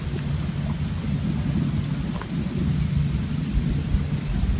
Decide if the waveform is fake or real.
real